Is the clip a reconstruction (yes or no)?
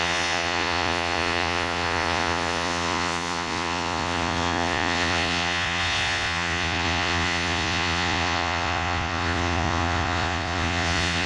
yes